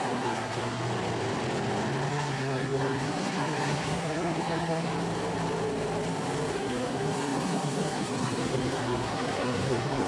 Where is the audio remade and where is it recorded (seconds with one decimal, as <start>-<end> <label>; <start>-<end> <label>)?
0.0-0.8 remade; 0.8-2.1 recorded; 2.1-4.9 remade; 4.9-6.5 recorded; 6.5-10.1 remade